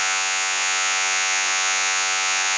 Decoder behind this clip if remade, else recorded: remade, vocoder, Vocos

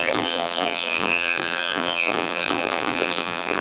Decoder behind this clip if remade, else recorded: remade, vocoder, BigVGAN v2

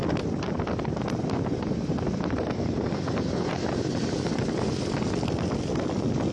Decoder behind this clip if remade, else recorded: remade, vocoder, BigVGAN v2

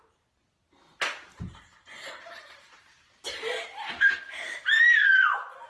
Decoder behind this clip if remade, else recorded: recorded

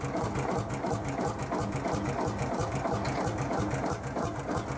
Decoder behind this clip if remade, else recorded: recorded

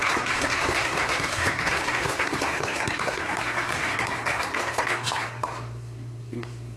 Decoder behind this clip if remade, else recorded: remade, codec, SNAC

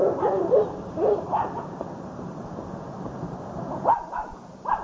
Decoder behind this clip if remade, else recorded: remade, vocoder, BigVGAN v2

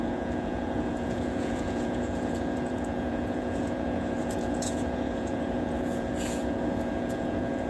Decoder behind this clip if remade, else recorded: remade, vocoder, Vocos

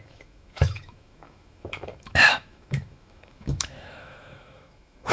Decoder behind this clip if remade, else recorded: remade, autoencoder, DAC-VAE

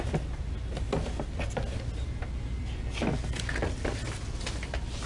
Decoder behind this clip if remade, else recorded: recorded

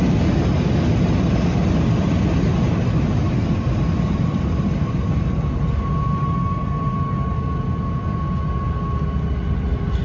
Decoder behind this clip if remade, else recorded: recorded